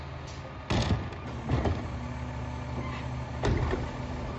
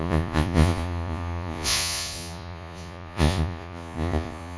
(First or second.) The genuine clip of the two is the first